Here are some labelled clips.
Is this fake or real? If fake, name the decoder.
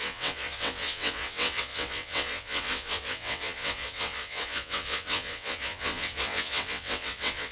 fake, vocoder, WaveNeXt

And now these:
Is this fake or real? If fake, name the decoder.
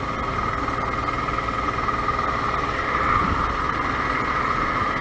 real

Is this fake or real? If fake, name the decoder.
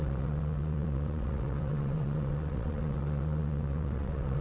fake, vocoder, WaveNeXt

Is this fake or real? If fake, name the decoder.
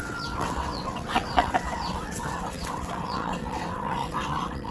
fake, vocoder, WaveNeXt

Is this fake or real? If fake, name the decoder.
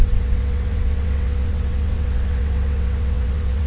fake, vocoder, WaveNeXt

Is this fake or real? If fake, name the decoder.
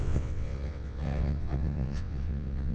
fake, vocoder, WaveNeXt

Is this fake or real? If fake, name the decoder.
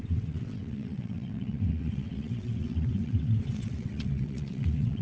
fake, vocoder, WaveNeXt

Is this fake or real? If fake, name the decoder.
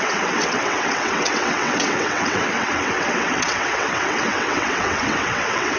fake, vocoder, WaveNeXt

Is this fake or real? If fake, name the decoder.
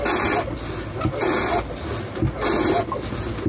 real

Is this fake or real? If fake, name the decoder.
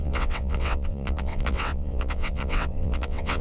fake, vocoder, WaveNeXt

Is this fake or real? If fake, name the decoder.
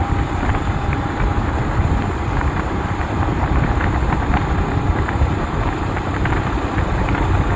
real